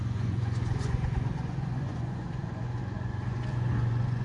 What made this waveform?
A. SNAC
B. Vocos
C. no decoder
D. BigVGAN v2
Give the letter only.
B